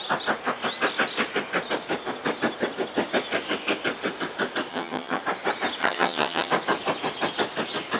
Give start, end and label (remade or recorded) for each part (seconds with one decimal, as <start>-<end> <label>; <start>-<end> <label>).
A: 0.0-4.7 recorded; 4.7-5.2 remade; 5.2-5.8 recorded; 5.8-6.5 remade; 6.5-8.0 recorded